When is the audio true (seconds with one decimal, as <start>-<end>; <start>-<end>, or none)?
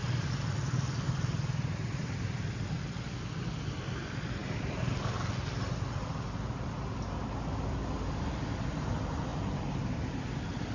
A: 0.0-4.4; 4.9-9.3